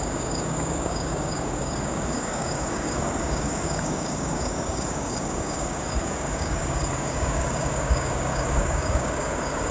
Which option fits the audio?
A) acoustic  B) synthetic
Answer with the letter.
B